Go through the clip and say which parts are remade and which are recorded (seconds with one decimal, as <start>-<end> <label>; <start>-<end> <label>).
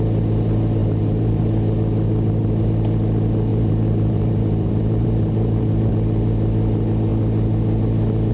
0.0-0.8 recorded; 0.8-1.4 remade; 1.4-3.5 recorded; 3.5-5.9 remade; 5.9-8.3 recorded